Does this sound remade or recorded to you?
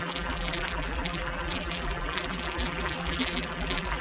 remade